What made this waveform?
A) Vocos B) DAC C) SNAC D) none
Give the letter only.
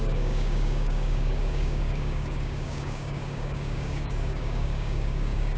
B